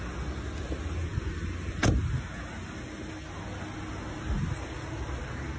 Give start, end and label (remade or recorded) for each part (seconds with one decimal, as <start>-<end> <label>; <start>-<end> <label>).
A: 0.0-5.6 recorded